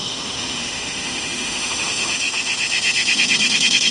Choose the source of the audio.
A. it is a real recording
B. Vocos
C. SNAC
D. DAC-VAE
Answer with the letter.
D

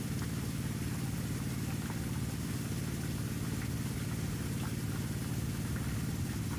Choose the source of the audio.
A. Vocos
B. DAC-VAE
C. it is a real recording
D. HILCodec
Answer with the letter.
C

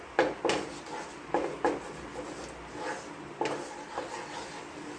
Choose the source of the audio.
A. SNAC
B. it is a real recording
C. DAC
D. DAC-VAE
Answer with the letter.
B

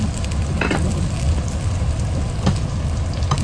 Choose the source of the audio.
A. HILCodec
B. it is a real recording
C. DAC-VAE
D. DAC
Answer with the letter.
B